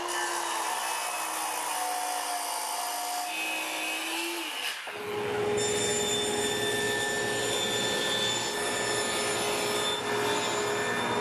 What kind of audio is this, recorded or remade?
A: recorded